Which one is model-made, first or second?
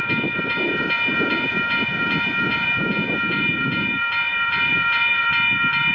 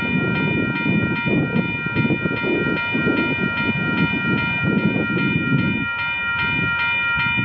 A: first